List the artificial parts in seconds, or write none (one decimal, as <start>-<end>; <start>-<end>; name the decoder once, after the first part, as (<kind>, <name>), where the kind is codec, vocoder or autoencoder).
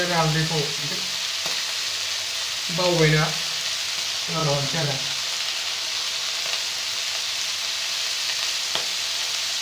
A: 4.4-5.0 (vocoder, BigVGAN v2)